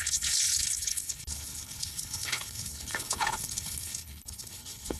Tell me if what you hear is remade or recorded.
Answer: remade